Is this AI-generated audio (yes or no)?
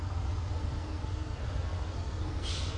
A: yes